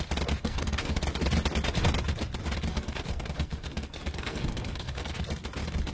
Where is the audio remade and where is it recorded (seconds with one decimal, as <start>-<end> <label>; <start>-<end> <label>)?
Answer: 0.0-0.4 recorded; 0.4-1.0 remade; 1.0-2.7 recorded; 2.7-5.2 remade; 5.2-5.9 recorded